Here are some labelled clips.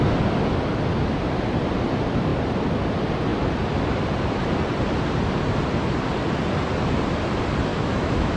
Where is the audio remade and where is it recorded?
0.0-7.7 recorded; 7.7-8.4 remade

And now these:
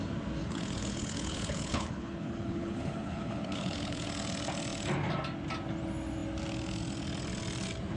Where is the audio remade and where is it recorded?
0.0-0.4 recorded; 0.4-4.1 remade; 4.1-8.0 recorded

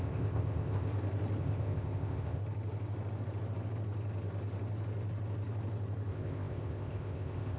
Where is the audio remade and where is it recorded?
0.0-0.9 remade; 0.9-1.4 recorded; 1.4-2.4 remade; 2.4-6.1 recorded; 6.1-7.6 remade

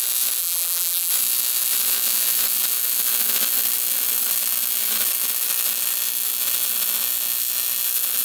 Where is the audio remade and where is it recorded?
0.0-0.4 recorded; 0.4-1.1 remade; 1.1-8.2 recorded

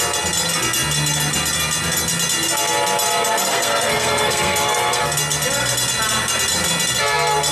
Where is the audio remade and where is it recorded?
0.0-3.4 recorded; 3.4-5.0 remade; 5.0-7.5 recorded